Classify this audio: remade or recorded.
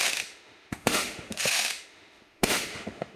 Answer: remade